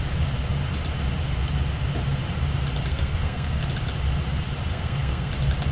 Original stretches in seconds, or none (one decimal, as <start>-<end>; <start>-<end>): 0.0-2.9; 3.7-4.7; 5.3-5.7